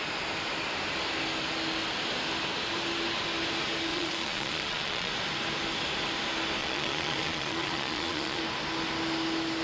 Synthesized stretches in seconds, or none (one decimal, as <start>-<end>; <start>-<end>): 3.9-5.1; 6.6-8.4